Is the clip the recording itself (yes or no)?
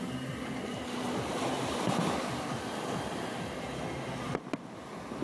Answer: yes